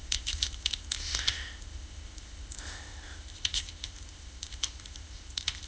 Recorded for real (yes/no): no